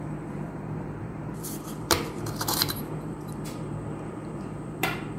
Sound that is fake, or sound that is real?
fake